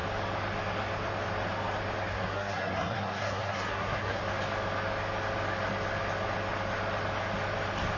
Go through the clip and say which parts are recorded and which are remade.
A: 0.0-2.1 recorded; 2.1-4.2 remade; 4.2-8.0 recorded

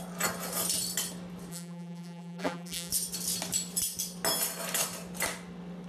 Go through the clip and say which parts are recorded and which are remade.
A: 0.0-1.5 recorded; 1.5-2.9 remade; 2.9-5.9 recorded